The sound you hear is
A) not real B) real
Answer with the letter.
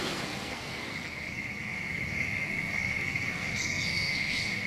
A